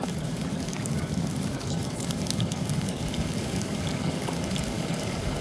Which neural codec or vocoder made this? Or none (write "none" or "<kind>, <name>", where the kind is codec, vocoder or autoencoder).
codec, DAC